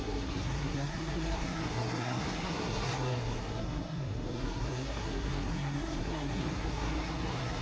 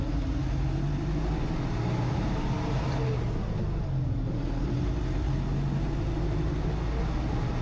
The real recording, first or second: second